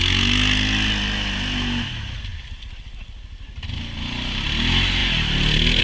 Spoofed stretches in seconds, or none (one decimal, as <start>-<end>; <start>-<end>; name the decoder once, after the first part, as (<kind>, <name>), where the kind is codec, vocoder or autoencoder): none